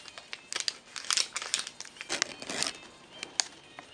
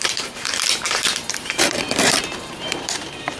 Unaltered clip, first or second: first